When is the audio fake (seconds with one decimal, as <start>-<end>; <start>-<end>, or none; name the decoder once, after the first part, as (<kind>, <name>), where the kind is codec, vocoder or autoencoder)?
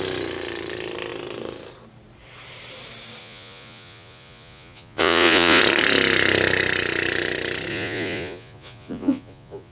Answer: 3.2-5.6 (vocoder, Vocos); 7.7-9.7